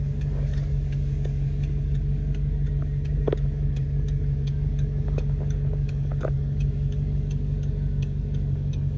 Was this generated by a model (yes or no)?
yes